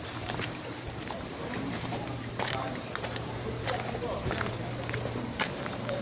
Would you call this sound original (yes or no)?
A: no